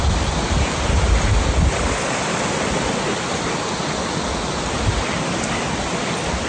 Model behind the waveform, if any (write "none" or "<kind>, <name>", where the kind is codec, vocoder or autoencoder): none